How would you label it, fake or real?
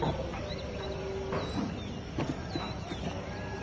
real